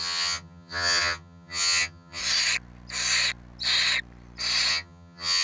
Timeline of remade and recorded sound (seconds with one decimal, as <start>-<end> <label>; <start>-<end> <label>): 0.0-2.2 remade; 2.2-4.7 recorded; 4.7-5.4 remade